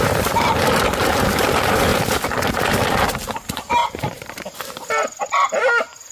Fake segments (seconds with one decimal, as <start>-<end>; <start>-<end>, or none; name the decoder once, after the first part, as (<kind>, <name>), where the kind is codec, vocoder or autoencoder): 0.0-1.9 (vocoder, BigVGAN v2); 2.5-6.1